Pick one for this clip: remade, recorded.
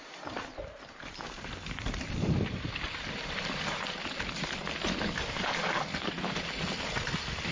remade